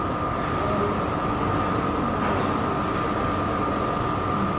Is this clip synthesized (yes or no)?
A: no